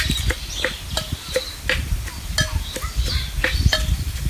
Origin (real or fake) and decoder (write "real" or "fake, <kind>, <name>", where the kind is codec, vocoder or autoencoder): real